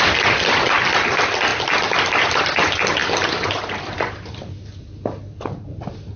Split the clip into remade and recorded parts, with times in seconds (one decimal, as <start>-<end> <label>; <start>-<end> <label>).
0.0-6.2 recorded